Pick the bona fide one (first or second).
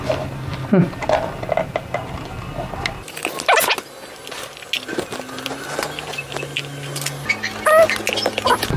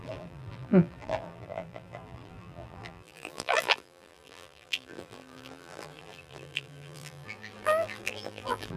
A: first